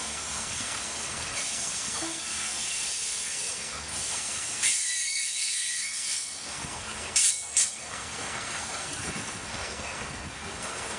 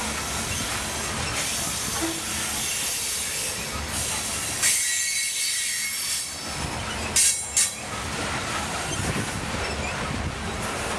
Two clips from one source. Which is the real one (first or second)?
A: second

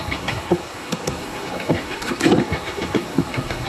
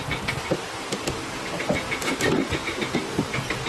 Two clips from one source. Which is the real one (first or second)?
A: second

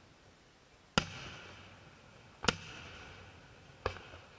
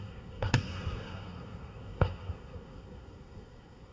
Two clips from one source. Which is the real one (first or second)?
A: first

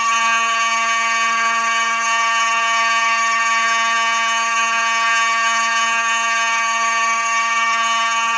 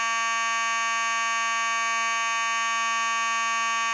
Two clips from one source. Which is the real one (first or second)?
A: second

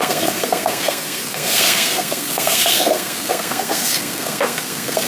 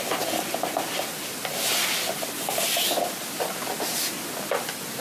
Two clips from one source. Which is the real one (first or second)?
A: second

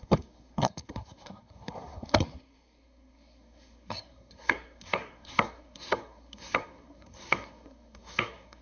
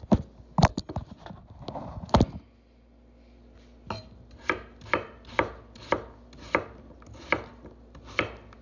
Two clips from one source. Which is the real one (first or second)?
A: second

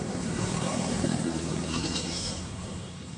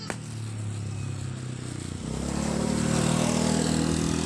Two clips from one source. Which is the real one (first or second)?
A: second